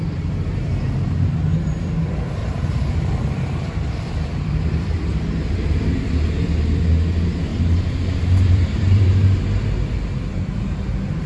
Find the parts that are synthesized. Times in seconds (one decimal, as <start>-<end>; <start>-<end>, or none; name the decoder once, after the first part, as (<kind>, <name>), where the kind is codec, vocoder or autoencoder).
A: 2.4-5.5 (vocoder, BigVGAN v2); 7.5-9.4